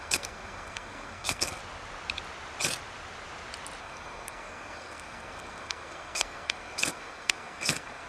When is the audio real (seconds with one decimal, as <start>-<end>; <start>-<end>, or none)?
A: 1.6-3.8

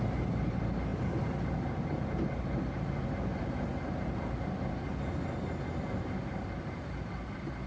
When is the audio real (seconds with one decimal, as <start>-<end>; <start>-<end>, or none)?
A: 0.0-7.7

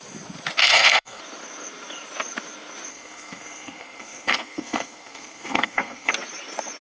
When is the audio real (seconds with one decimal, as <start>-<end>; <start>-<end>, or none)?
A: 0.0-0.6; 1.2-2.9; 6.1-6.9

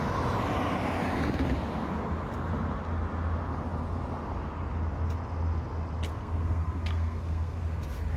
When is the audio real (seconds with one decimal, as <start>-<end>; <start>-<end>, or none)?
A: 0.0-6.1; 7.6-8.2

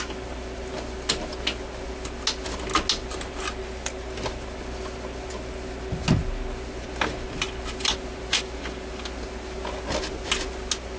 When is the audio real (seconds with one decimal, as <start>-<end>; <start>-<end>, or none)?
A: 0.0-11.0